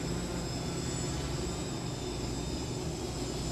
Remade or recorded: recorded